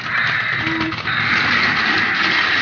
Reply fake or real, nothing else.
real